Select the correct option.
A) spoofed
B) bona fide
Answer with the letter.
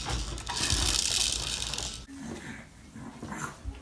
B